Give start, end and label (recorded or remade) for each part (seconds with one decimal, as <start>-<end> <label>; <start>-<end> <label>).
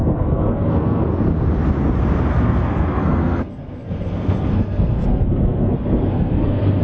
0.0-1.0 remade; 1.0-2.3 recorded; 2.3-6.8 remade